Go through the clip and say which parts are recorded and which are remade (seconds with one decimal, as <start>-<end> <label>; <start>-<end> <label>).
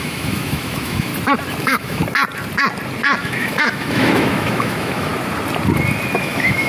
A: 0.0-1.1 remade; 1.1-1.6 recorded; 1.6-2.0 remade; 2.0-3.2 recorded; 3.2-5.1 remade; 5.1-6.2 recorded; 6.2-6.7 remade